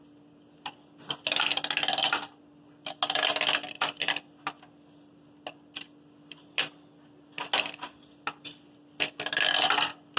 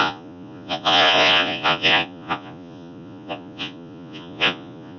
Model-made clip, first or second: second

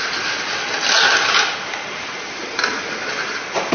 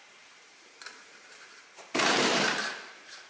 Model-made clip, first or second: second